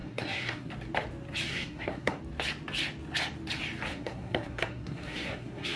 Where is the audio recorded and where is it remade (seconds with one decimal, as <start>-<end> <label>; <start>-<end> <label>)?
0.0-0.7 remade; 0.7-1.5 recorded; 1.5-2.2 remade; 2.2-3.9 recorded; 3.9-5.8 remade

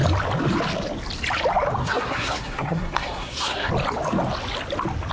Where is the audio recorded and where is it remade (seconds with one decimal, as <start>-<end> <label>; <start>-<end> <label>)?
0.0-1.8 recorded; 1.8-3.7 remade; 3.7-5.1 recorded

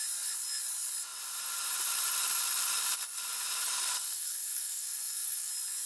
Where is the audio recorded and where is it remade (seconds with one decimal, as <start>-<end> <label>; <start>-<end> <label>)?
0.0-3.9 recorded; 3.9-5.5 remade; 5.5-5.9 recorded

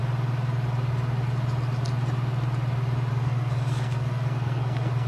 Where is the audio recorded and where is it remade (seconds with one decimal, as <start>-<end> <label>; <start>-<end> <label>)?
0.0-3.1 recorded; 3.1-5.1 remade

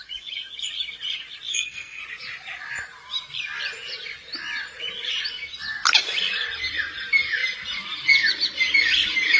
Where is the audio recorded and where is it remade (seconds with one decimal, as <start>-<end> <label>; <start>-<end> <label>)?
0.0-1.5 recorded; 1.5-2.0 remade; 2.0-9.4 recorded

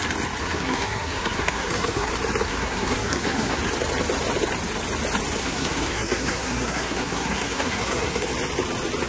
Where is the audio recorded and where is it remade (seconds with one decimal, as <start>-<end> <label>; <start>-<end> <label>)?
0.0-0.4 recorded; 0.4-2.1 remade; 2.1-2.5 recorded; 2.5-3.6 remade; 3.6-5.4 recorded; 5.4-8.3 remade; 8.3-9.1 recorded